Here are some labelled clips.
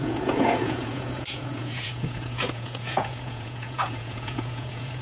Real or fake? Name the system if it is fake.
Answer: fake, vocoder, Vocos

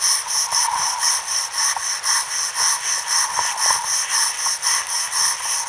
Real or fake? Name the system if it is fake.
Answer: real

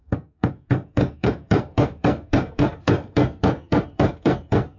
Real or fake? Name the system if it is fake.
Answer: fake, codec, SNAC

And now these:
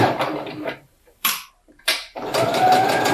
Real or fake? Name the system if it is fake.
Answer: fake, vocoder, BigVGAN v2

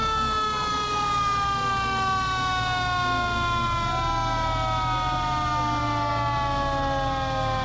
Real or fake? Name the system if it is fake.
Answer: real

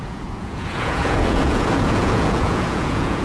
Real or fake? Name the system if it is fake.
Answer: fake, vocoder, Vocos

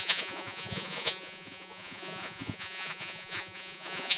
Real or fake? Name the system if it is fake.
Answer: fake, vocoder, Vocos